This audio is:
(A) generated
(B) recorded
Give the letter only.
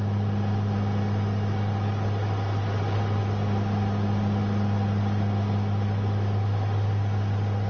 B